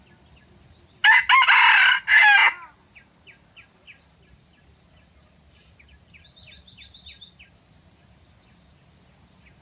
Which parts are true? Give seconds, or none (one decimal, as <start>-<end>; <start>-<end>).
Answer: 0.0-9.6